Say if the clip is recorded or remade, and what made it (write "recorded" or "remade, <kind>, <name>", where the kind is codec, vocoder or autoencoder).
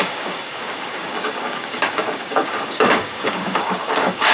remade, codec, DAC